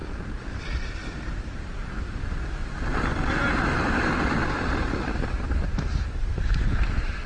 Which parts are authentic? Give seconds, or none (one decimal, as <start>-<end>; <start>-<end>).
0.0-1.0; 1.6-7.3